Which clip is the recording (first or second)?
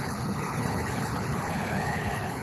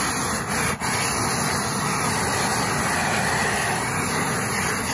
second